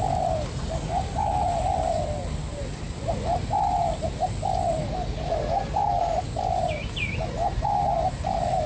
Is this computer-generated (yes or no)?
no